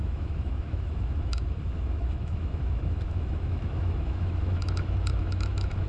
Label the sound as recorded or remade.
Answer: remade